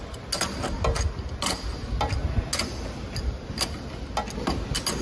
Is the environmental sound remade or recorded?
recorded